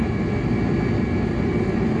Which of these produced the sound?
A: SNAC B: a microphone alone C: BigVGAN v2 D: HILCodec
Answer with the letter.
B